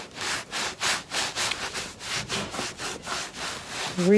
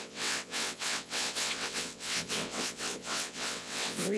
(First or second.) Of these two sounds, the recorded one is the first